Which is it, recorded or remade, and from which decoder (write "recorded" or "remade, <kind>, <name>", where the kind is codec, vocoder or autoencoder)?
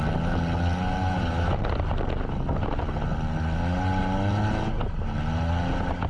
recorded